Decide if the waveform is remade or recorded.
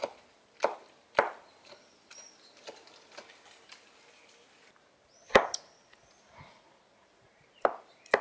recorded